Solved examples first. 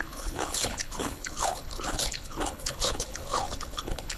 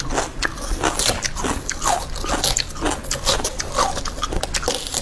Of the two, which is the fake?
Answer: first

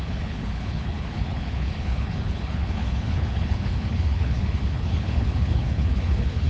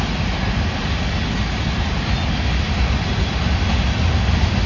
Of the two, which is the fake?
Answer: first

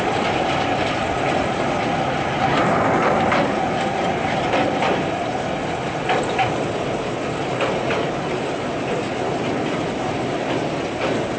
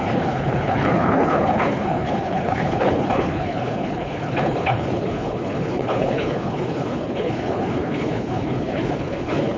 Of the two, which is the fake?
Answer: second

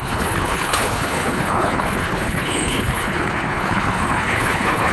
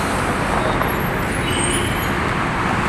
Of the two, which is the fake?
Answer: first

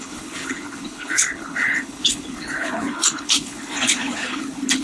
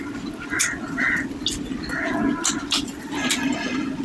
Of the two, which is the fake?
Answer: first